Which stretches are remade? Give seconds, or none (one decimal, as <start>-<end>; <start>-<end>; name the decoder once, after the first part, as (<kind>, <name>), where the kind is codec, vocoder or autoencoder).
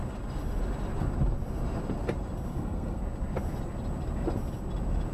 2.5-3.0 (codec, SNAC)